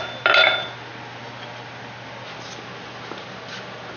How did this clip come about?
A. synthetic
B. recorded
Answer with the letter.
B